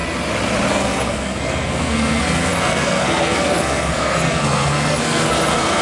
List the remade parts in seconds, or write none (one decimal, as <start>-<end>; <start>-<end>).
0.7-5.8